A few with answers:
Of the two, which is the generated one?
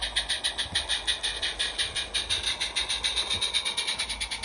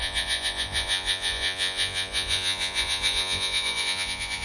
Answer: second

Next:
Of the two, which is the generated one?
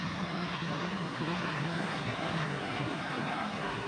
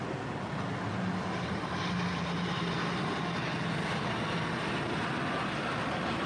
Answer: first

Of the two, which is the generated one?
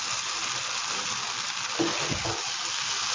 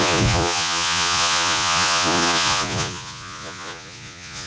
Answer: second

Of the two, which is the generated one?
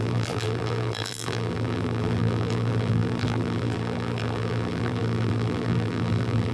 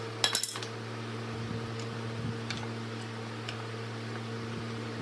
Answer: first